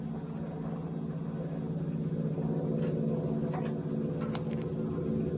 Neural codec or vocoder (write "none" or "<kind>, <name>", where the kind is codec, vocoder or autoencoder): none